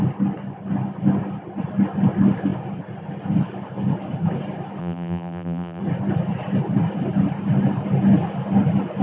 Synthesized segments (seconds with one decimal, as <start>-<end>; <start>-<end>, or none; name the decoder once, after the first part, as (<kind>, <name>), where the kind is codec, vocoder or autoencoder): 4.8-5.8 (vocoder, BigVGAN v2)